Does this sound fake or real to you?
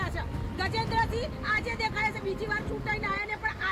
real